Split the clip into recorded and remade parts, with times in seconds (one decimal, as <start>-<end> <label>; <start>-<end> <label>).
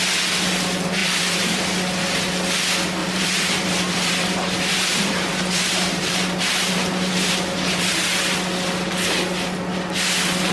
0.0-1.0 recorded; 1.0-1.6 remade; 1.6-3.0 recorded; 3.0-7.9 remade; 7.9-10.5 recorded